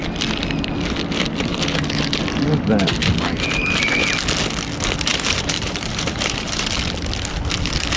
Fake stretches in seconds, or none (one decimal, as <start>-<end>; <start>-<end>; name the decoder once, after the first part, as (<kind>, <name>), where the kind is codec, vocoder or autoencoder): 5.1-6.7 (vocoder, BigVGAN v2)